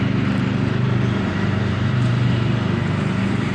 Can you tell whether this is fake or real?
fake